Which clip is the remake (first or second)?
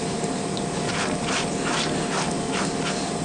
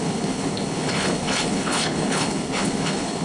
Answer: second